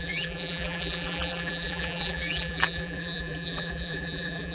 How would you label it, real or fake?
fake